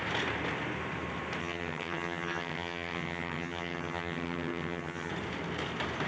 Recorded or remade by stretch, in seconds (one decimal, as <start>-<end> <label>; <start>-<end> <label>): 0.0-1.4 recorded; 1.4-5.1 remade; 5.1-6.1 recorded